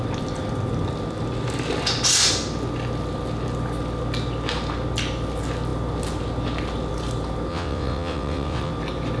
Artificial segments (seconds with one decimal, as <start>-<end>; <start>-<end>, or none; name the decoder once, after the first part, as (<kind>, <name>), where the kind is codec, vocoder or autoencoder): 7.5-8.7 (vocoder, WaveNeXt)